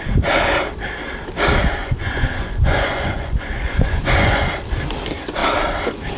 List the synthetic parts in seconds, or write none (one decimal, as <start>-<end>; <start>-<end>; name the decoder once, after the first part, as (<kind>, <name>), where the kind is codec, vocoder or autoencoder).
1.8-4.5 (vocoder, Vocos)